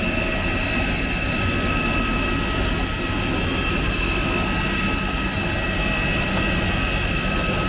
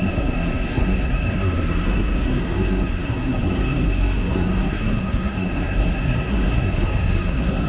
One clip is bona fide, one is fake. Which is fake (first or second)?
second